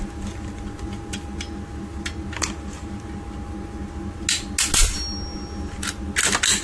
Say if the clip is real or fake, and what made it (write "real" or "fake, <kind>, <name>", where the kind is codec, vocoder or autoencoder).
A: real